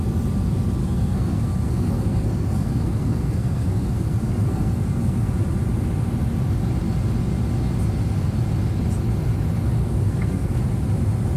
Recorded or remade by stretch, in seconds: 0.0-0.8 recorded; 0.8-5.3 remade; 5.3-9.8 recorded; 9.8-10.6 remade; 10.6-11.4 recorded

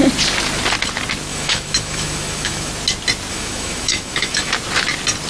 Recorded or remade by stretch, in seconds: 0.0-1.3 recorded; 1.3-2.7 remade; 2.7-3.3 recorded; 3.3-4.5 remade; 4.5-5.3 recorded

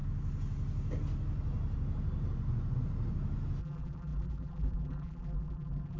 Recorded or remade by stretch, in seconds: 0.0-3.6 recorded; 3.6-6.0 remade

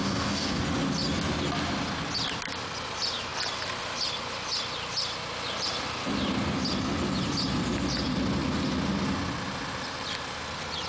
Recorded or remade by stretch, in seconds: 0.0-0.6 remade; 0.6-10.9 recorded

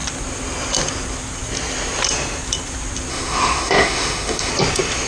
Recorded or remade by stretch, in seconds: 0.0-3.1 recorded; 3.1-4.5 remade; 4.5-5.1 recorded

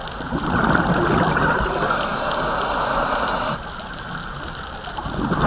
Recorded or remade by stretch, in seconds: 0.0-5.5 recorded

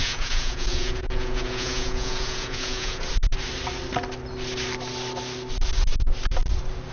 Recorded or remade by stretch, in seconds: 0.0-3.1 remade; 3.1-6.9 recorded